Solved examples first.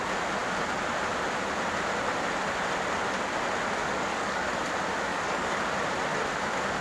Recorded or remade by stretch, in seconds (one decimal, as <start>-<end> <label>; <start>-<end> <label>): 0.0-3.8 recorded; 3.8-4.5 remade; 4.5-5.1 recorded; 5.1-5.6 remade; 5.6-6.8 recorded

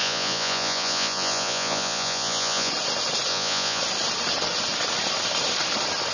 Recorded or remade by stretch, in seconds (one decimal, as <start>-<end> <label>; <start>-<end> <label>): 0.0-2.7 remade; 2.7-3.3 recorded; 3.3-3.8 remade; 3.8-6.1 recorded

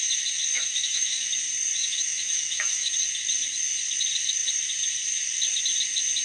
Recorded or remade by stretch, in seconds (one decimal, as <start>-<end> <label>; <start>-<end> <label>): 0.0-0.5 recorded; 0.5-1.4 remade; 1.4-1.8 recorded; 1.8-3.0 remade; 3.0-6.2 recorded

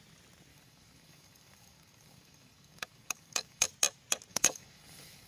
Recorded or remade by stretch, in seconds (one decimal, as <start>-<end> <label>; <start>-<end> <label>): 0.0-0.5 recorded; 0.5-3.7 remade; 3.7-4.3 recorded; 4.3-5.3 remade

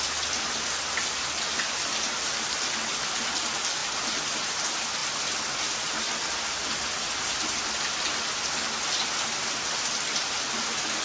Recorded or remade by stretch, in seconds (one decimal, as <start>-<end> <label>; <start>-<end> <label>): 0.0-11.0 recorded

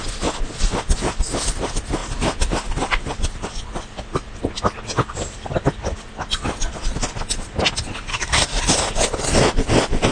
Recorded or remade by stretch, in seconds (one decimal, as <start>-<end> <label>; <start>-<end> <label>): 0.0-8.1 recorded; 8.1-8.6 remade; 8.6-10.1 recorded